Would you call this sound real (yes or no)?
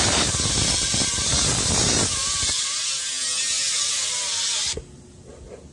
yes